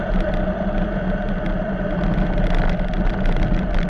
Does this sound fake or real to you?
real